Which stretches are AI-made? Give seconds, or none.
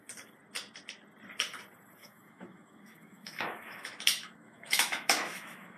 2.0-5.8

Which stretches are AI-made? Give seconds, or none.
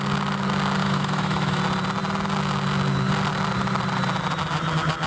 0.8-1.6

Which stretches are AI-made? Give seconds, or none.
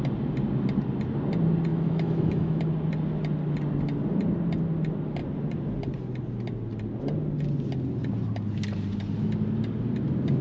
1.7-2.6